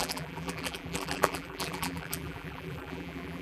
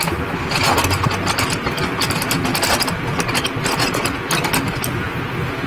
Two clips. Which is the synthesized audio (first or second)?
first